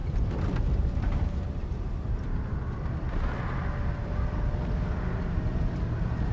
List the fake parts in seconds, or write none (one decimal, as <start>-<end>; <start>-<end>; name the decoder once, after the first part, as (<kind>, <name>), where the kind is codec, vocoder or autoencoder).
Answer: 0.0-2.4 (vocoder, BigVGAN v2)